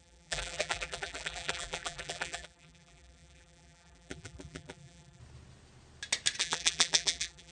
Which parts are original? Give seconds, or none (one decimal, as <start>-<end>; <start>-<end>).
5.2-6.4